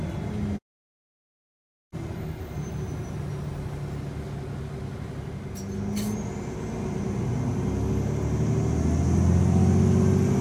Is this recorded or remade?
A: recorded